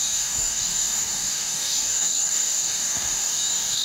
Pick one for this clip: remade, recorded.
remade